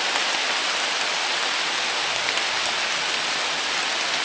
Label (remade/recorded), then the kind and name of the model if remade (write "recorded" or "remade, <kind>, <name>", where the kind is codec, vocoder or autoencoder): recorded